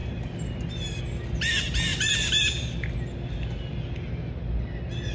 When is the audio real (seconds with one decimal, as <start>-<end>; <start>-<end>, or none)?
0.0-5.1